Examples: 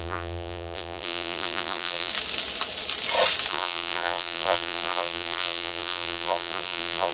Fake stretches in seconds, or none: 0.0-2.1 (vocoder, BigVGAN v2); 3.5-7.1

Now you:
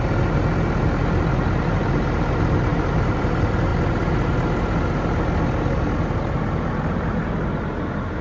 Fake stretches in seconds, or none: 2.7-3.3 (vocoder, BigVGAN v2)

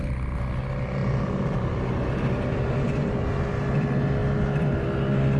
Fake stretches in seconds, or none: none

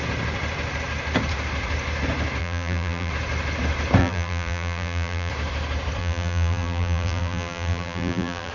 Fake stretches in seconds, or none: 2.4-3.1 (vocoder, BigVGAN v2); 4.0-5.3; 6.0-8.5